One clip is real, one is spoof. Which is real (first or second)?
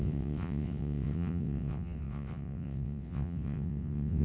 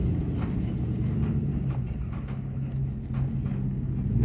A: second